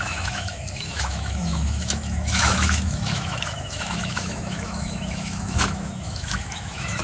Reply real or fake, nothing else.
fake